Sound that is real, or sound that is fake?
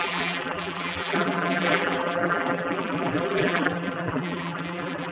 fake